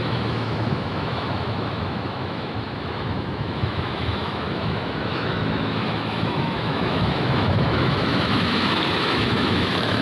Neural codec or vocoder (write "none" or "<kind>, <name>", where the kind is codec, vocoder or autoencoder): autoencoder, DAC-VAE